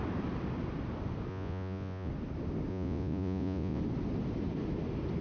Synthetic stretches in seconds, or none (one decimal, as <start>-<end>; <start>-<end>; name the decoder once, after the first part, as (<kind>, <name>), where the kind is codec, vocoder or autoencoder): 1.3-2.1 (vocoder, Vocos); 2.7-3.8